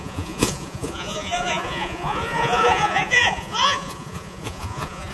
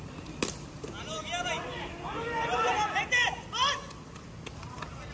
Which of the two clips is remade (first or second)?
first